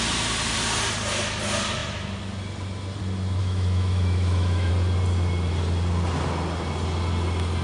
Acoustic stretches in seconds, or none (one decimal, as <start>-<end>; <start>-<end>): 0.0-3.4; 4.7-7.6